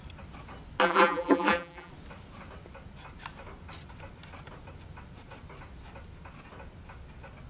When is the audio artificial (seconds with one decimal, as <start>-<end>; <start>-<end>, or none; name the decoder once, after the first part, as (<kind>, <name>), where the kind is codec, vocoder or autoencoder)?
0.8-1.9 (vocoder, BigVGAN v2)